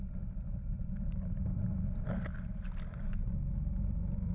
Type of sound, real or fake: real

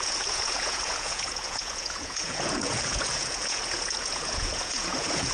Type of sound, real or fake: fake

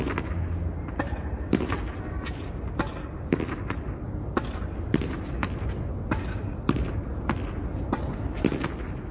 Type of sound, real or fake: real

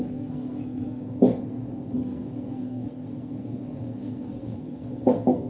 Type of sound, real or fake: fake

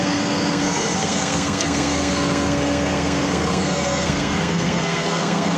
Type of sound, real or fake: fake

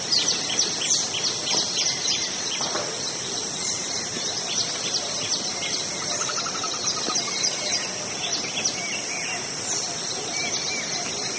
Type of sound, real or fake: real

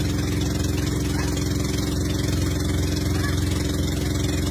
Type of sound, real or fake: real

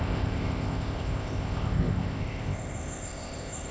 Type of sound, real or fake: fake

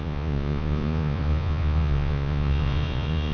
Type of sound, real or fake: fake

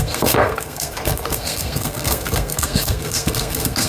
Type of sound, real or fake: fake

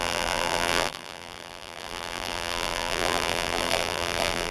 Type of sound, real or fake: fake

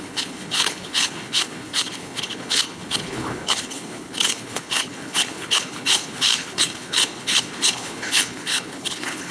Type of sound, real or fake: fake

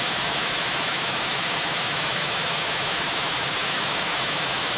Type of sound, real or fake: fake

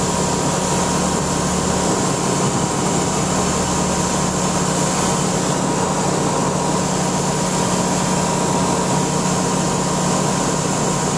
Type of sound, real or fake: real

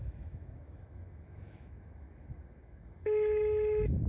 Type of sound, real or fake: fake